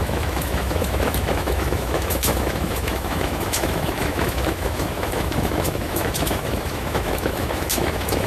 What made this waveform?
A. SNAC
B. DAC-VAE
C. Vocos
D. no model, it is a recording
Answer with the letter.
B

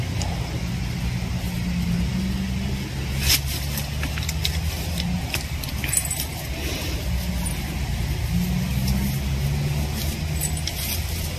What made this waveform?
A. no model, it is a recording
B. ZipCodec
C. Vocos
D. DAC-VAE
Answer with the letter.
A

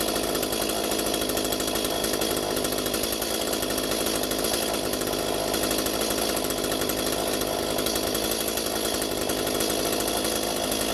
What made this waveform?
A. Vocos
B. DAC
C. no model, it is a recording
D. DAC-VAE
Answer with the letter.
C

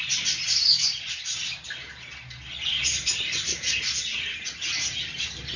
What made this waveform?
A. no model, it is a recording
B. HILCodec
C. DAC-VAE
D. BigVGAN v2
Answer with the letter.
A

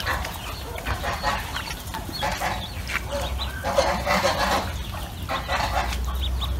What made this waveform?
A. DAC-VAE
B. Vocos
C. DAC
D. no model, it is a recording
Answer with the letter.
D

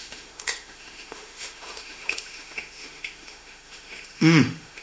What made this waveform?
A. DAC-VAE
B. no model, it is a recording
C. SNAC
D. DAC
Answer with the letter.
A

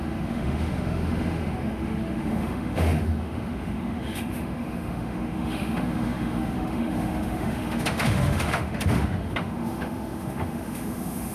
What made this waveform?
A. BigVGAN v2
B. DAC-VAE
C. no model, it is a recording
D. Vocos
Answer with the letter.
B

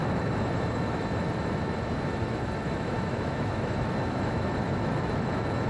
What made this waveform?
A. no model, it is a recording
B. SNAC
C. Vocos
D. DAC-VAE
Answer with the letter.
D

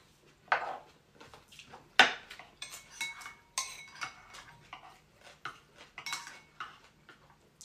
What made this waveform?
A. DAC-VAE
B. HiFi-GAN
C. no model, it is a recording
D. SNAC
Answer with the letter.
C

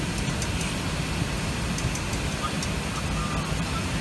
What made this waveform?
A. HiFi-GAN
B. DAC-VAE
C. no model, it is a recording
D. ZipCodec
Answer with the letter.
C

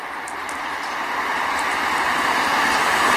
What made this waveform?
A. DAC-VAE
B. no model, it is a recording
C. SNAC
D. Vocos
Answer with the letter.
B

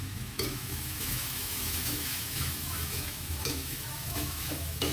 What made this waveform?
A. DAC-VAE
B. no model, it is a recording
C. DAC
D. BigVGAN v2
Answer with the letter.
A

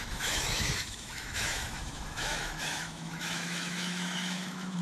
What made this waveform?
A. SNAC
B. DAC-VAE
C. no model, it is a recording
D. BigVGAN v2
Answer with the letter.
B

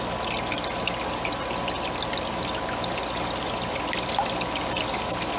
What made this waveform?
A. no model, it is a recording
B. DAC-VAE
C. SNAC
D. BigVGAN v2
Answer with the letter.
A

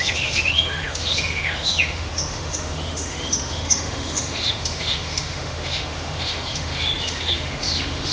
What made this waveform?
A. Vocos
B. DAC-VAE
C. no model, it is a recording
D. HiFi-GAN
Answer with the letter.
B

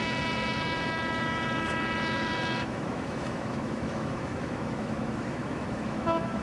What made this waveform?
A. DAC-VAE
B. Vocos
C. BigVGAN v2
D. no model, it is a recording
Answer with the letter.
A